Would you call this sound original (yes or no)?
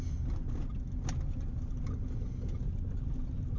yes